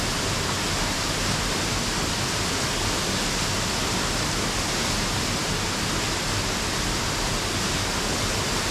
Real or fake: real